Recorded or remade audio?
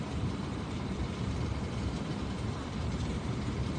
remade